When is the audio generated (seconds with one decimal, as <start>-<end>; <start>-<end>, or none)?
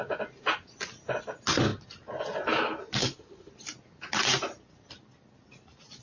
3.0-3.5